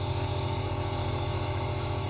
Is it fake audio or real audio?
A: fake